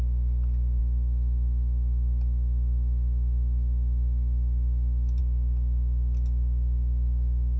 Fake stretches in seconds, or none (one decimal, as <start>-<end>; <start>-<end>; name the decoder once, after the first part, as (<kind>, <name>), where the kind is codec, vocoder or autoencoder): none